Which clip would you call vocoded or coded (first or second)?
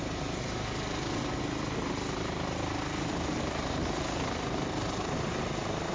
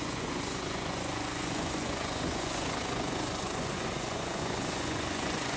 second